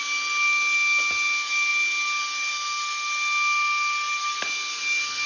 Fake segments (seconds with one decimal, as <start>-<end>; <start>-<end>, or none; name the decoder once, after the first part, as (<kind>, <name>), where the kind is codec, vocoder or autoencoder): none

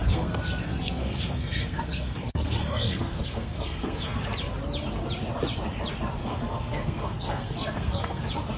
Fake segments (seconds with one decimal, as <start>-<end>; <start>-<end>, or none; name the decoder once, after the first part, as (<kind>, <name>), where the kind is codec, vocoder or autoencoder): 0.0-4.2 (codec, SNAC); 6.2-8.2

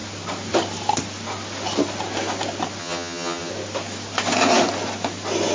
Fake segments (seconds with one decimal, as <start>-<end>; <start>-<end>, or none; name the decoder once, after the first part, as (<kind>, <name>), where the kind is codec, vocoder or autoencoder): 2.8-3.5 (vocoder, HiFi-GAN)

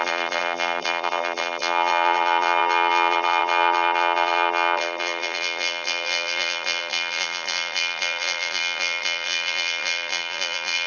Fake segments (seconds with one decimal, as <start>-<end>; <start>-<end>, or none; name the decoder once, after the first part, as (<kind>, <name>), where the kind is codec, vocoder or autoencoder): 0.0-10.9 (vocoder, BigVGAN v2)